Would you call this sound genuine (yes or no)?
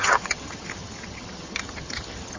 no